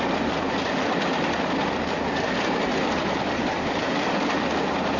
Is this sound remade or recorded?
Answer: recorded